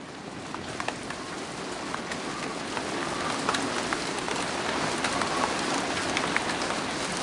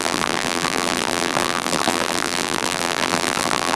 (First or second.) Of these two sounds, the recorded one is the first